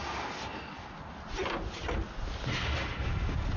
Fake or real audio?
real